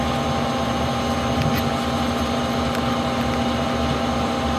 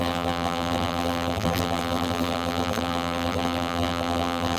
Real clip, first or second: first